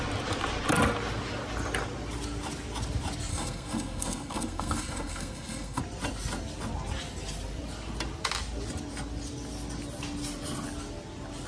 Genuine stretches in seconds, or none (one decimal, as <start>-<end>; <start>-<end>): 0.0-3.3; 5.8-11.5